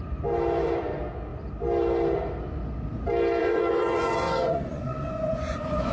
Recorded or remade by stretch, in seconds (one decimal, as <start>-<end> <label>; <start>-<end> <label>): 0.0-3.4 recorded; 3.4-5.9 remade